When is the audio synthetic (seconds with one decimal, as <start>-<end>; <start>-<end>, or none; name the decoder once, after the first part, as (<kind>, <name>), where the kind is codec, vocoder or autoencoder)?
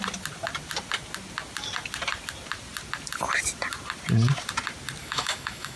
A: 5.0-5.8 (autoencoder, DAC-VAE)